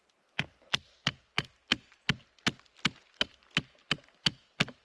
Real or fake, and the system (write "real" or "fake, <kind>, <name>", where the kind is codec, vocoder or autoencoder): real